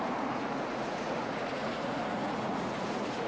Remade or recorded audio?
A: remade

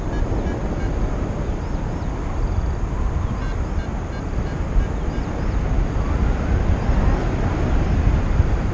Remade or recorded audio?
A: recorded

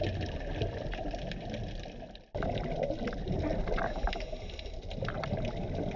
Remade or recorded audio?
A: recorded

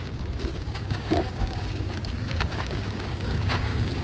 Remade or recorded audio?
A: remade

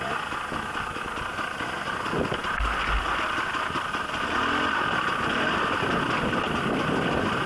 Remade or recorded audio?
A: recorded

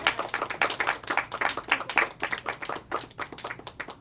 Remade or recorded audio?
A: recorded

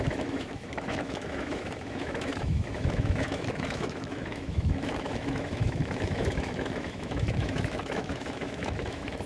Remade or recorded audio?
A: remade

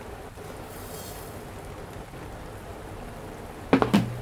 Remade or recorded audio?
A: recorded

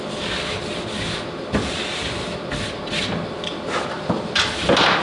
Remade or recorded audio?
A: recorded